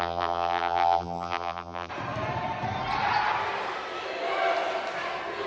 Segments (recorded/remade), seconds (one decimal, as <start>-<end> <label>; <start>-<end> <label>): 0.0-1.9 remade; 1.9-5.5 recorded